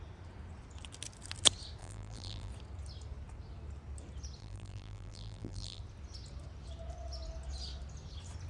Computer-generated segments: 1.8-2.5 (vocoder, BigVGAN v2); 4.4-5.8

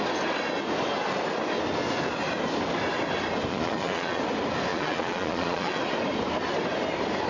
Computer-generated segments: 3.5-4.2 (vocoder, Vocos); 4.7-5.8

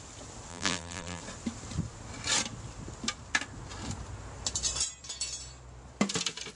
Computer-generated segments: 0.5-1.2 (vocoder, BigVGAN v2)